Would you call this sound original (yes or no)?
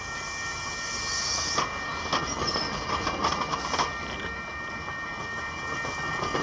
yes